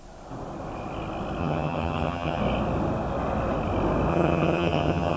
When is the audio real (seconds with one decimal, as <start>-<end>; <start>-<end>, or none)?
0.0-1.4; 2.4-4.1